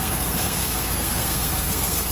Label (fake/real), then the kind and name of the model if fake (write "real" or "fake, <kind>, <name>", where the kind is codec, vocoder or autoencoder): fake, codec, SNAC